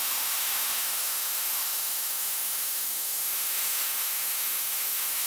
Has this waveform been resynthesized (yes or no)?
yes